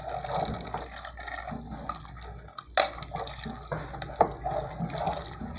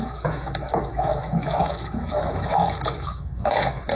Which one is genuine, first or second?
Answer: first